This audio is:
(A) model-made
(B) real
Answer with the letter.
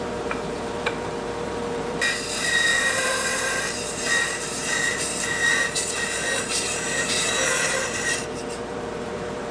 A